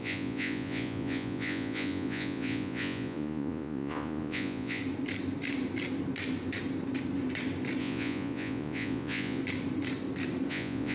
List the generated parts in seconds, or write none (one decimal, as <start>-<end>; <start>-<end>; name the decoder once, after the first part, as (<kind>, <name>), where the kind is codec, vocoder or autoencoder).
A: 0.0-4.8 (vocoder, Vocos); 7.8-9.4; 10.5-10.9